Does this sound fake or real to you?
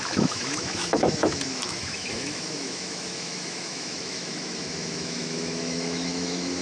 fake